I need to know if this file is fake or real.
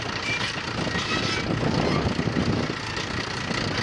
real